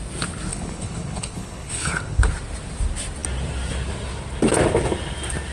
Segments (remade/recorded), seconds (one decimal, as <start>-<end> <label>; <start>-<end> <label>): 0.0-0.5 recorded; 0.5-2.3 remade; 2.3-5.5 recorded